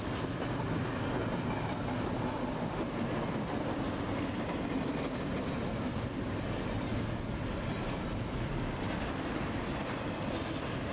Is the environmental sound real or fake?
real